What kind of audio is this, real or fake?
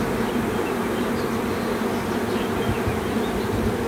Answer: real